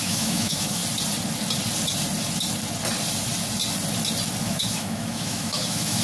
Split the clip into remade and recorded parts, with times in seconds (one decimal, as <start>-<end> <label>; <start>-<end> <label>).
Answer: 0.0-0.8 remade; 0.8-4.4 recorded; 4.4-6.0 remade